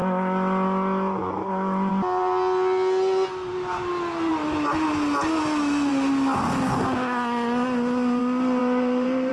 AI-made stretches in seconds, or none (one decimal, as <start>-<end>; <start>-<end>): 8.6-9.3